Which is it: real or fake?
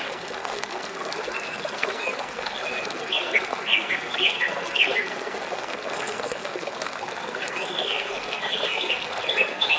fake